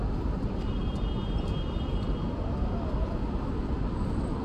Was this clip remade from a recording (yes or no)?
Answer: no